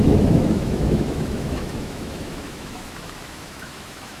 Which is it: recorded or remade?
remade